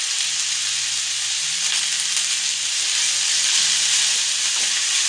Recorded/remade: recorded